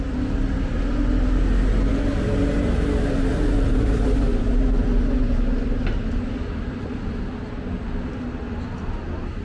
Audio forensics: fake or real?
real